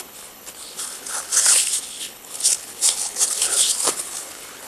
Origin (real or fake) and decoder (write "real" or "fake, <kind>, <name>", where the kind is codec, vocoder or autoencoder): fake, codec, HILCodec